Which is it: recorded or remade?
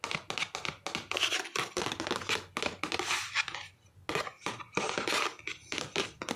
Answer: recorded